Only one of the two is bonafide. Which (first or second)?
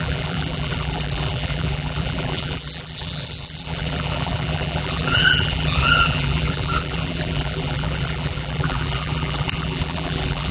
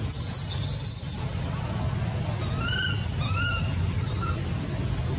second